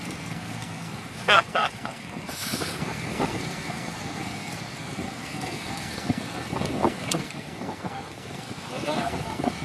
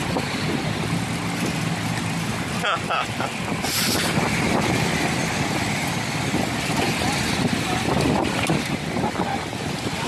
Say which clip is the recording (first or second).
second